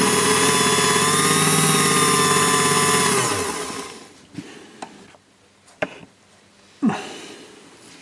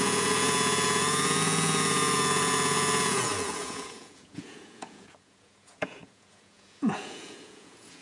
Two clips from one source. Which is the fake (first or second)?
second